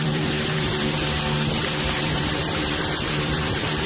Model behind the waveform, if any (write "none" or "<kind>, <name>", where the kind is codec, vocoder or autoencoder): vocoder, BigVGAN v2